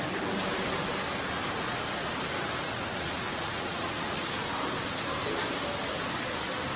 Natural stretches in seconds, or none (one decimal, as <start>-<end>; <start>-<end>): 0.0-2.9; 4.5-6.8